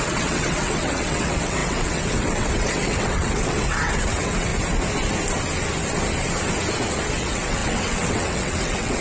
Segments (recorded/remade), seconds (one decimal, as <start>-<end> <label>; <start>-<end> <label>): 0.0-4.5 remade; 4.5-7.1 recorded; 7.1-9.0 remade